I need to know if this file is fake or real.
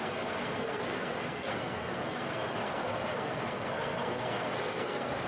fake